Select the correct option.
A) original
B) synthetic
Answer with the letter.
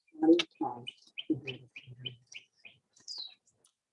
A